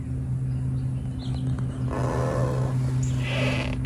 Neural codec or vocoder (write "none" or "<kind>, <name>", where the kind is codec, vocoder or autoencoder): none